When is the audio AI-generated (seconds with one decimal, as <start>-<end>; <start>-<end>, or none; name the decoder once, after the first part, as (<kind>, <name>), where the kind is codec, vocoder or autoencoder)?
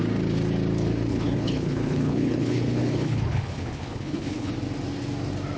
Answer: 1.1-4.5 (codec, HILCodec)